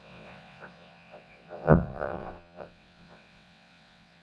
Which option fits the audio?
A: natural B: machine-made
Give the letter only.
B